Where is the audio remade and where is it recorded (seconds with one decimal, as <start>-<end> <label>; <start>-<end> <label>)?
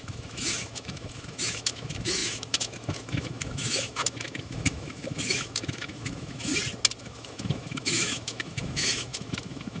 0.0-6.5 remade; 6.5-7.0 recorded; 7.0-9.8 remade